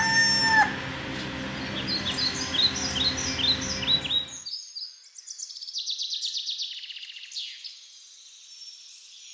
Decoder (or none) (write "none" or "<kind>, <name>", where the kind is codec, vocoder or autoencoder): none